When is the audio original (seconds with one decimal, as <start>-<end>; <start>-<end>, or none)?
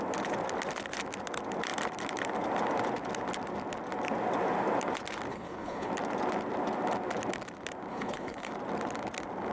0.0-5.3; 5.9-7.9; 8.5-9.5